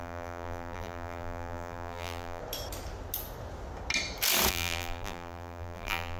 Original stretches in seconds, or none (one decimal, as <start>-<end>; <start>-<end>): 2.4-4.5